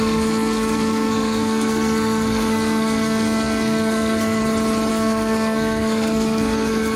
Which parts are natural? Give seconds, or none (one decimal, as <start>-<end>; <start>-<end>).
4.4-4.9